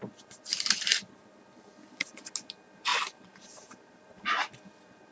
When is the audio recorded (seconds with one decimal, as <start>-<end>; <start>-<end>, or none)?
0.0-2.9; 4.2-5.1

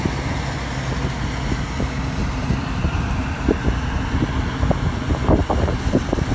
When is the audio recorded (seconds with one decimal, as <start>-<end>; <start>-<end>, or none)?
0.0-2.2; 4.0-5.4